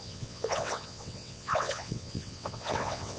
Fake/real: fake